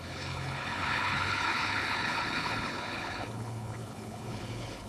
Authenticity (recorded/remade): remade